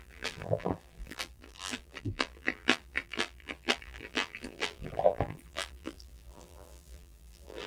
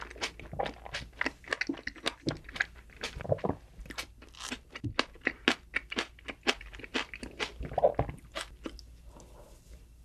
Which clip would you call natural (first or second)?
second